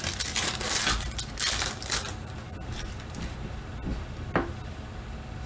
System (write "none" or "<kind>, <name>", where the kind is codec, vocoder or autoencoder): none